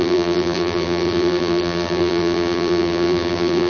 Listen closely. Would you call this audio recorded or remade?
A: remade